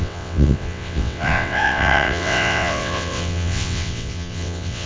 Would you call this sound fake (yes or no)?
yes